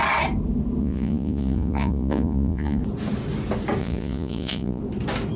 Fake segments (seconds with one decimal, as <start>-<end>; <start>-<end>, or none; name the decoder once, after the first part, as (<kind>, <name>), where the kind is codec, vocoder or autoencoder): 0.8-2.8 (vocoder, Vocos); 3.8-4.8